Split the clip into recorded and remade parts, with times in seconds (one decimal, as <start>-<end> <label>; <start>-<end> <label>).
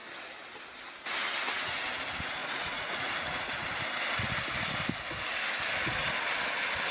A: 0.0-2.4 recorded; 2.4-3.5 remade; 3.5-6.9 recorded